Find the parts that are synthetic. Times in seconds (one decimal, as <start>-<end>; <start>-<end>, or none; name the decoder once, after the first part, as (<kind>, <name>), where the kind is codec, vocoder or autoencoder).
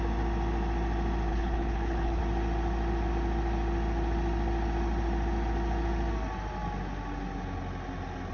1.3-2.2 (codec, HILCodec)